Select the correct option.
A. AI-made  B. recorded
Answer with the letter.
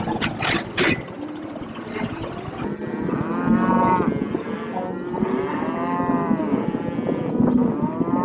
B